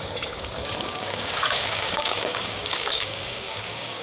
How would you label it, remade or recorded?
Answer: remade